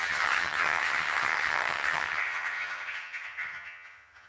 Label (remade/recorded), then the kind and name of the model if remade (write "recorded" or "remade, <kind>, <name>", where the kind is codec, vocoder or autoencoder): remade, vocoder, HiFi-GAN